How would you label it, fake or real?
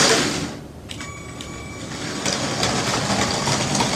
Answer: real